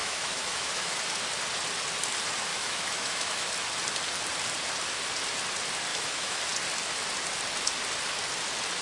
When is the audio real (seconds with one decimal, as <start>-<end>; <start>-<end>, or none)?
1.0-2.5; 3.5-5.9; 6.4-8.8